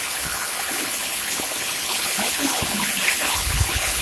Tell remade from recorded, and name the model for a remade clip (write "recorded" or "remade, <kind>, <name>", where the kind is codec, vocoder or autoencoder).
remade, codec, HILCodec